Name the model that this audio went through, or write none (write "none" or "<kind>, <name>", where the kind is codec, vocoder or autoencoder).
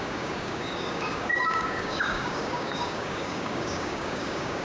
codec, DAC